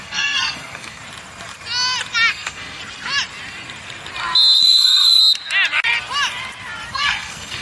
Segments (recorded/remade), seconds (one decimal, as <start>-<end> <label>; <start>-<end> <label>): 0.0-1.0 remade; 1.0-2.3 recorded; 2.3-2.8 remade; 2.8-4.6 recorded; 4.6-5.2 remade; 5.2-6.9 recorded; 6.9-7.6 remade